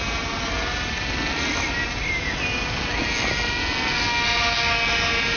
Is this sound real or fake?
real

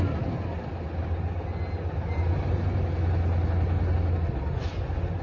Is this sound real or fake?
real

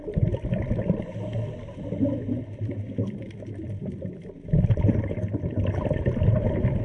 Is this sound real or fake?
real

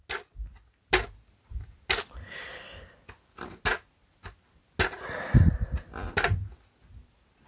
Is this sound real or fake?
real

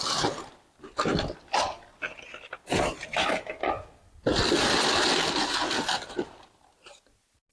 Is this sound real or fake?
real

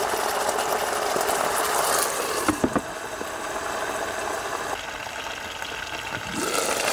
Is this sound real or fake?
real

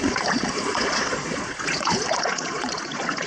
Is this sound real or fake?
fake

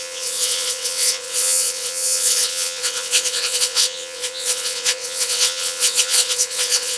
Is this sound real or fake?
fake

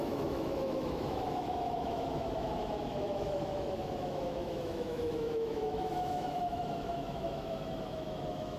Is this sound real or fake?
fake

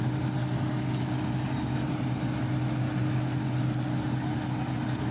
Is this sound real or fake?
real